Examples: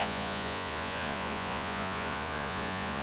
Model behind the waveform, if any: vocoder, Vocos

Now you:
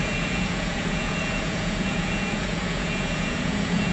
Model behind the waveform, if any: vocoder, Vocos